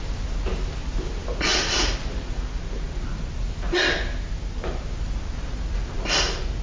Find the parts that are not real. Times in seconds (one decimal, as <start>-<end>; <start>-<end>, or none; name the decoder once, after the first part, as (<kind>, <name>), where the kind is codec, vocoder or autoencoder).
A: none